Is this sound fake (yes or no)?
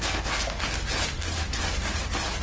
no